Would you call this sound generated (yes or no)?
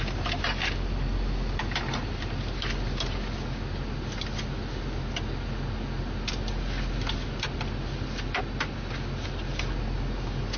no